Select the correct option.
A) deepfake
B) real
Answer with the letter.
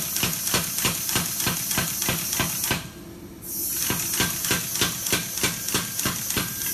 B